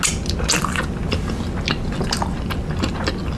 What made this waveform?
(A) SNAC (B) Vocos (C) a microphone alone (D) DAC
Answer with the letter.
C